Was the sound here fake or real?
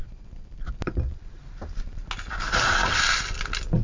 real